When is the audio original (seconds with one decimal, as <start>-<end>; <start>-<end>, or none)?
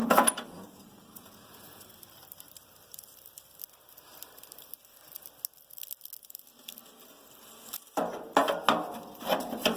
1.9-9.8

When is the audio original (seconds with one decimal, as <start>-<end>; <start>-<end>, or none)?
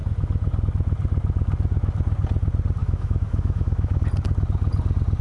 0.0-2.8; 4.0-5.2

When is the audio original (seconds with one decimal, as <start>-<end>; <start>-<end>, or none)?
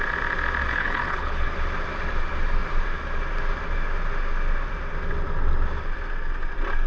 0.0-0.7; 1.5-6.9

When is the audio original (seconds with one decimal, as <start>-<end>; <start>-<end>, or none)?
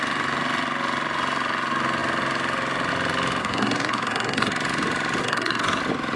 0.0-3.4; 4.5-5.2; 5.8-6.2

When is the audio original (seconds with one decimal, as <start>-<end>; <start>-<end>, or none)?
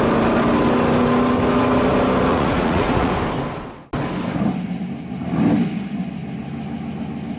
0.0-2.3; 3.1-7.4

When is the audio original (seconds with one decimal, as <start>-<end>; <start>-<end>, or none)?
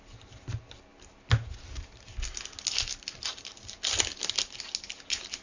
0.0-5.4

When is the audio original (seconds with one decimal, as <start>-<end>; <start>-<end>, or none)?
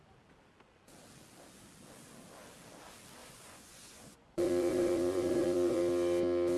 0.0-3.2; 5.8-6.6